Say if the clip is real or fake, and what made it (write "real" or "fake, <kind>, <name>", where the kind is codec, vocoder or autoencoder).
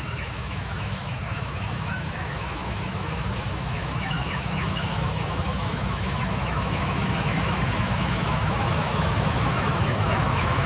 fake, autoencoder, DAC-VAE